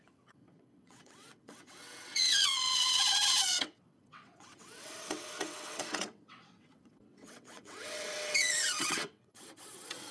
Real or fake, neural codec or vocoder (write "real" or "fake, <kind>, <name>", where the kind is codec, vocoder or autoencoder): fake, vocoder, WaveNeXt